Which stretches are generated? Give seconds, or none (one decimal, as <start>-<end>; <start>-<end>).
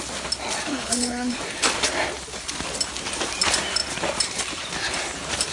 0.7-1.4